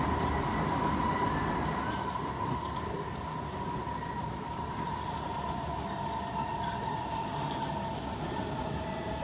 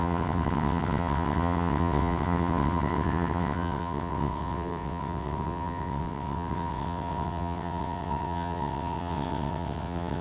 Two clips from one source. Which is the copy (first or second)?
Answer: second